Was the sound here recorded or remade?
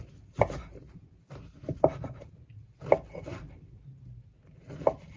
recorded